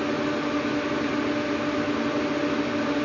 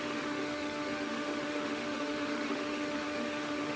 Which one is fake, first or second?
second